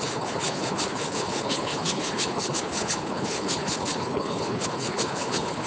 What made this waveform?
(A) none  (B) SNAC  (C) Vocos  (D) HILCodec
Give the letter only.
D